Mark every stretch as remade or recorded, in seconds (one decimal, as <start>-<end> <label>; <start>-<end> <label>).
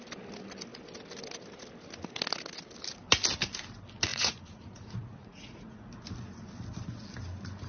0.0-4.1 recorded; 4.1-5.9 remade; 5.9-7.7 recorded